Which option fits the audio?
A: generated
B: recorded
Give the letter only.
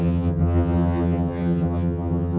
A